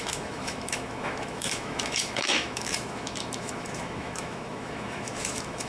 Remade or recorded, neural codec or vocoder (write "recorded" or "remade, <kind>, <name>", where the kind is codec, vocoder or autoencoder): remade, autoencoder, DAC-VAE